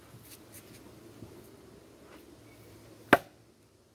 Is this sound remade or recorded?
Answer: recorded